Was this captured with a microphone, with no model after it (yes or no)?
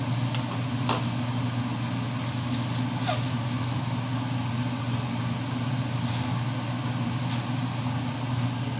yes